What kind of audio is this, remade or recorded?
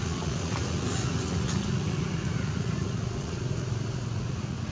remade